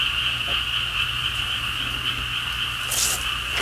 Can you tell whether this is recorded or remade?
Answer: recorded